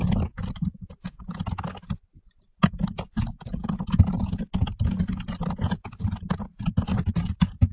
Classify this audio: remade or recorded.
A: recorded